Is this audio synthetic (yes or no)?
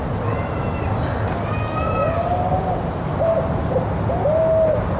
no